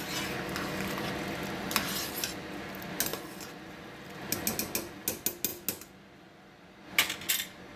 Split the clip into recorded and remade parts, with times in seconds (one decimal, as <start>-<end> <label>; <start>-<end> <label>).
0.0-7.8 recorded